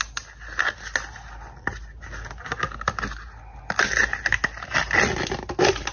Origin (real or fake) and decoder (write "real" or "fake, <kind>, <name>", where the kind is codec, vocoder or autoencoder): real